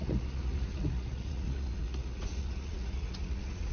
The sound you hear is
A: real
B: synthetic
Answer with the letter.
B